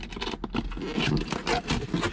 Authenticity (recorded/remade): recorded